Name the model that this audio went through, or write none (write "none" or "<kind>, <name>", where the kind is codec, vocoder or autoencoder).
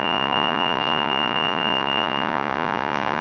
vocoder, Vocos